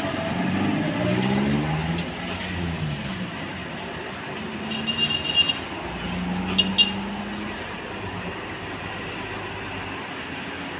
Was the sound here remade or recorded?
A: recorded